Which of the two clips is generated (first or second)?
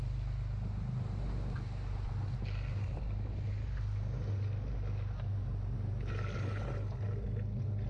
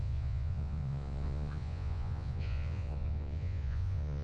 second